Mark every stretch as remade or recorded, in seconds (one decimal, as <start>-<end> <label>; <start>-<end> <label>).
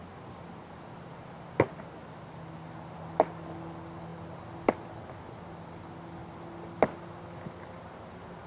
0.0-8.5 recorded